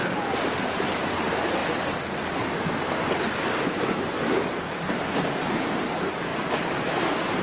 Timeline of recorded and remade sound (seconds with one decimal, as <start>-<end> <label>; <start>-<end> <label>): 0.0-0.7 remade; 0.7-6.3 recorded; 6.3-7.4 remade